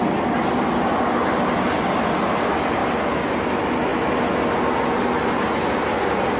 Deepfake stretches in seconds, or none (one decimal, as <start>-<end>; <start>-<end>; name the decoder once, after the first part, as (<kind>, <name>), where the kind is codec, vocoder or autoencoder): none